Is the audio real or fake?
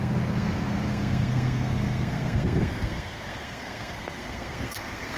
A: fake